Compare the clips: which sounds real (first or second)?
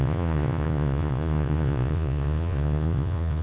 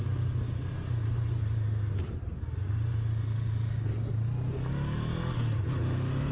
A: second